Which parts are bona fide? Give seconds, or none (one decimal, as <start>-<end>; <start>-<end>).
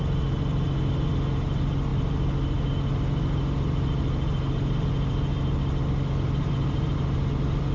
0.0-7.7